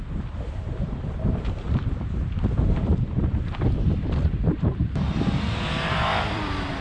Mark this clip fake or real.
fake